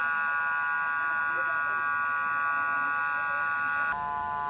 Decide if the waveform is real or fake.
real